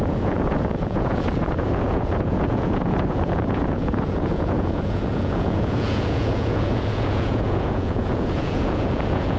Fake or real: fake